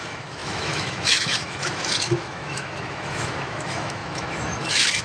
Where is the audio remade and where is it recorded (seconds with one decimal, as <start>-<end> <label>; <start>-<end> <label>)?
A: 0.0-5.0 remade